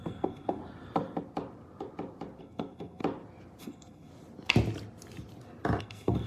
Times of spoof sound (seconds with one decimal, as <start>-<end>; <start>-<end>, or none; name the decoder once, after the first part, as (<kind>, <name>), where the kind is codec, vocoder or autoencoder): 0.0-0.6 (codec, SNAC); 2.4-3.0; 3.6-4.1; 5.8-6.3